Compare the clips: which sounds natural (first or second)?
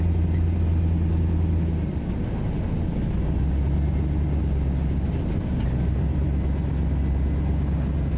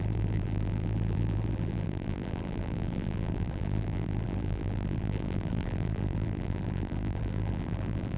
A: first